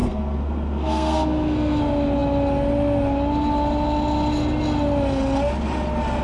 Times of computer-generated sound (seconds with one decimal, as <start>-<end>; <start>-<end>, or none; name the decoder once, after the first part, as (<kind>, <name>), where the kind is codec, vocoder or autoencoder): 0.0-1.8 (codec, SNAC)